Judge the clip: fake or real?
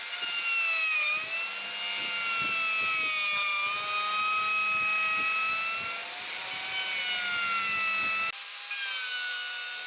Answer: real